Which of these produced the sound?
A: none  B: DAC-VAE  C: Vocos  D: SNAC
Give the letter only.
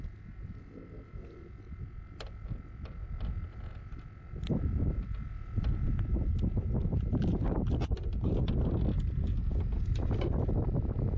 A